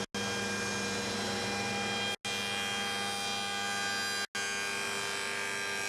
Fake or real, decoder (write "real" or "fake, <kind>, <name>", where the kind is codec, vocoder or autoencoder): real